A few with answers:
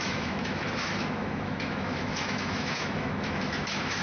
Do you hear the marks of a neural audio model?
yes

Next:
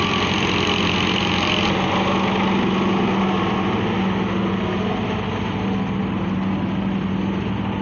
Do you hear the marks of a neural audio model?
no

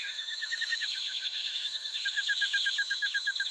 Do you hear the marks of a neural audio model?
yes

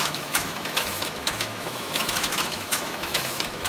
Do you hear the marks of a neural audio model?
yes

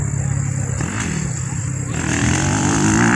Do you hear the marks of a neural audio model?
no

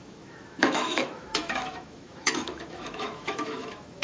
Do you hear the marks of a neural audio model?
yes